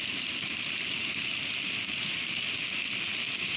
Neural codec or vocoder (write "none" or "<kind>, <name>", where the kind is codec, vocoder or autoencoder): none